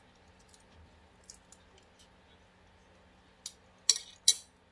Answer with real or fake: real